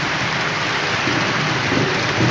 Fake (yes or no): yes